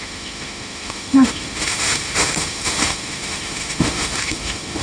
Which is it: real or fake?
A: fake